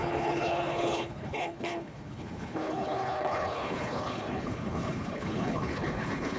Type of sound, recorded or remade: remade